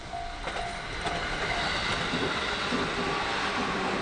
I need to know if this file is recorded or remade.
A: recorded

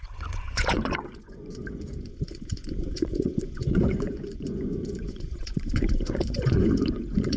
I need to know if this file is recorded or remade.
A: remade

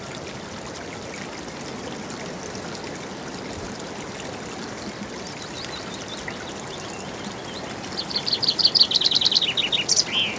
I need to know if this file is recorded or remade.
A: recorded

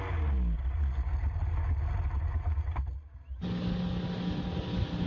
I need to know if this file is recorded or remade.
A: recorded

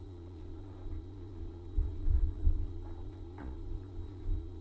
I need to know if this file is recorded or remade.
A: remade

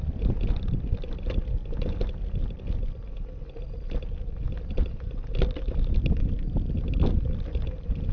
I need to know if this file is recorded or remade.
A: recorded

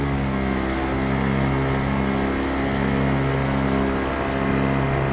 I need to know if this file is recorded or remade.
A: recorded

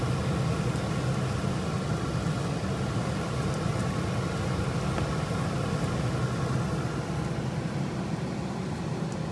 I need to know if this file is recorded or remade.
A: recorded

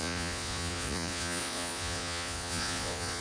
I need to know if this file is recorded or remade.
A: remade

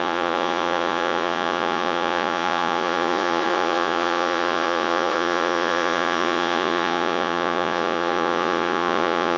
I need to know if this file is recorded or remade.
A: remade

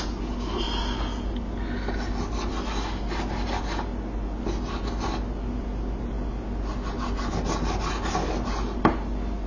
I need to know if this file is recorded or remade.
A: recorded